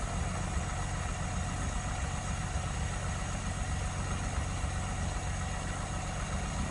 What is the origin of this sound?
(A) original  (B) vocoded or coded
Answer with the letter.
A